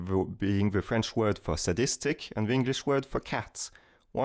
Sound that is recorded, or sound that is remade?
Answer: remade